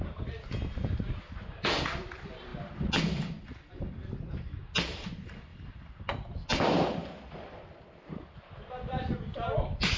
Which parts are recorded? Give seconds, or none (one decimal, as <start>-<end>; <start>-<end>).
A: 0.0-5.5; 6.0-7.0; 8.4-10.0